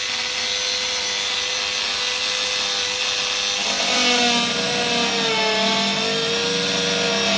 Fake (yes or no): no